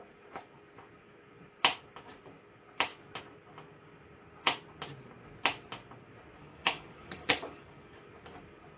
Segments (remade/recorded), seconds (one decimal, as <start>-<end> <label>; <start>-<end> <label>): 0.0-6.4 recorded; 6.4-8.1 remade; 8.1-8.8 recorded